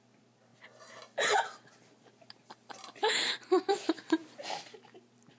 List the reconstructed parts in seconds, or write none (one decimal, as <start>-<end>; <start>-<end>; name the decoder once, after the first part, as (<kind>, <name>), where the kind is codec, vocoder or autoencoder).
none